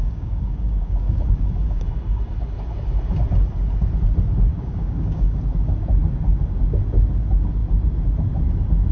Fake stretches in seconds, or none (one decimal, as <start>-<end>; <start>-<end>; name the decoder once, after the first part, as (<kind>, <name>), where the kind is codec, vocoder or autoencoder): 0.0-1.8 (codec, DAC); 4.5-5.4